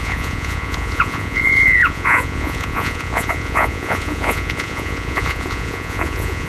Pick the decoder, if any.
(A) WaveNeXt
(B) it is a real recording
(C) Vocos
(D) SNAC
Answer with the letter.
C